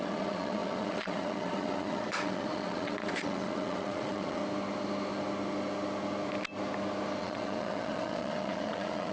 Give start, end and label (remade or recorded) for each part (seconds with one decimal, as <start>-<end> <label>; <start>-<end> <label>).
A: 0.0-4.4 remade; 4.4-7.2 recorded; 7.2-9.1 remade